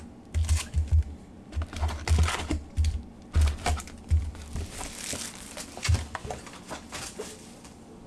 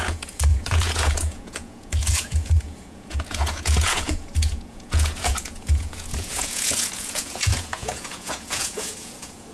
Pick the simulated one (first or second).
second